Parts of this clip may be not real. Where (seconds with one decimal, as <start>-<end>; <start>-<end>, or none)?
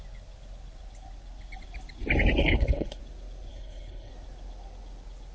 2.4-3.0; 3.5-4.1